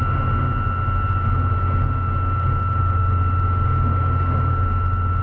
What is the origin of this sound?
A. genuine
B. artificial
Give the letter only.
A